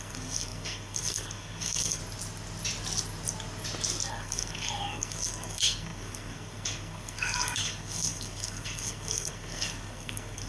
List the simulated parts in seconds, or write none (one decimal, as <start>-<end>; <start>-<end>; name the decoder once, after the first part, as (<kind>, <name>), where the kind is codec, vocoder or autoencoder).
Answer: 0.0-2.0 (codec, SNAC); 4.1-10.5